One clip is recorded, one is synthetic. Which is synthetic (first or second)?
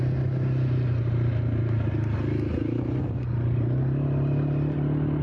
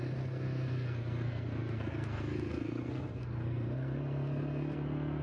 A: second